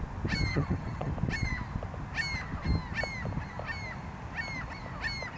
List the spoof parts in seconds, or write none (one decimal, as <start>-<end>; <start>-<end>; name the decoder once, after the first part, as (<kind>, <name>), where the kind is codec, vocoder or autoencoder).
0.5-1.1 (vocoder, HiFi-GAN)